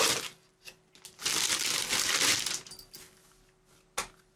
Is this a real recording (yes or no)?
yes